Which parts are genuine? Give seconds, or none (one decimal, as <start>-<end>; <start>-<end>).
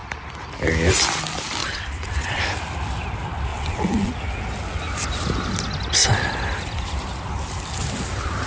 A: 0.0-1.6; 2.4-3.5; 4.1-8.5